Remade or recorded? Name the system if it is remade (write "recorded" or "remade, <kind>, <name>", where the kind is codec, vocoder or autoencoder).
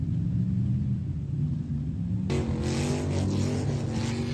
recorded